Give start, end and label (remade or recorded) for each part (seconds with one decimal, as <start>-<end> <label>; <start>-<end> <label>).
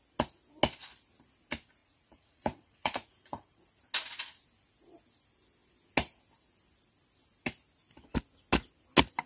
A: 0.0-1.8 recorded; 1.8-3.6 remade; 3.6-9.3 recorded